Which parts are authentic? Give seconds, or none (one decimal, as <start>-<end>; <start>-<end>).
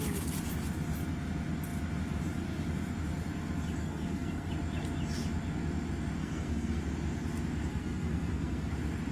0.0-3.8; 4.5-6.2; 6.8-7.7; 8.7-9.1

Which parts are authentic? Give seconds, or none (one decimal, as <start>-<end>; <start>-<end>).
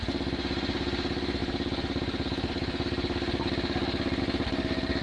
0.0-5.0